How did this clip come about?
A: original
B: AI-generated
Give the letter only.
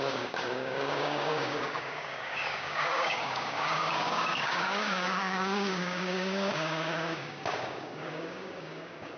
B